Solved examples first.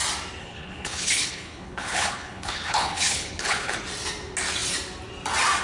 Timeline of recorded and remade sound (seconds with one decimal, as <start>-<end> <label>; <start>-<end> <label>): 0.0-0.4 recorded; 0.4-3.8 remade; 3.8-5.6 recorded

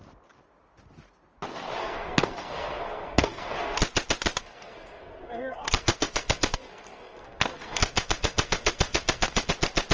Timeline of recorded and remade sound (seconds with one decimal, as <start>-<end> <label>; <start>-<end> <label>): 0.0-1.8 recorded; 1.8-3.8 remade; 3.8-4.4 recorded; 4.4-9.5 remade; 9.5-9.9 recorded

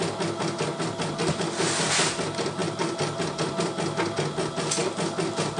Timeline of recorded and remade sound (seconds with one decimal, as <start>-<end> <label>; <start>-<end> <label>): 0.0-5.6 recorded